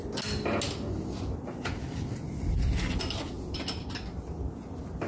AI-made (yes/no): no